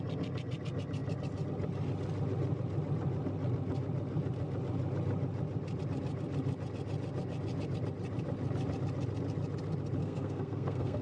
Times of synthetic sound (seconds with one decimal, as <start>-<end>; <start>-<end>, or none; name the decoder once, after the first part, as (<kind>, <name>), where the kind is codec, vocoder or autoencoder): 10.0-11.0 (codec, SNAC)